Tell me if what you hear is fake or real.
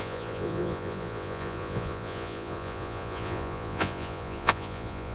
fake